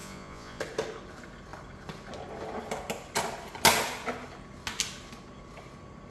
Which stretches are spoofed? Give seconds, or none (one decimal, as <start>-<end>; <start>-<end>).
0.0-0.6